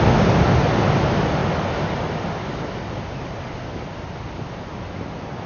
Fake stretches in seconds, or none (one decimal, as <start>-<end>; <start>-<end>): none